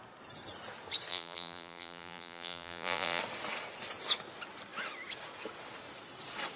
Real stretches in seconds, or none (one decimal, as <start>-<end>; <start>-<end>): 0.0-1.1; 3.2-6.6